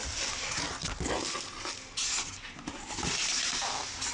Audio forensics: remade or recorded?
recorded